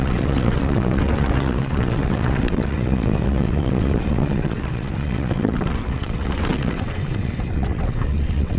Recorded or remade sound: remade